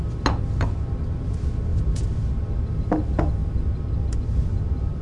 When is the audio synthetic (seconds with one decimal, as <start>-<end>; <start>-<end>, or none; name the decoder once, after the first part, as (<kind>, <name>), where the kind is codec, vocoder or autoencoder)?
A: none